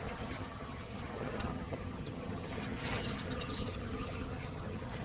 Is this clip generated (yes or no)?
yes